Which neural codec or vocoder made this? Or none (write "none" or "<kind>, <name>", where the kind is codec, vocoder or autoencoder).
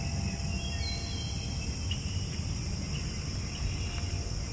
none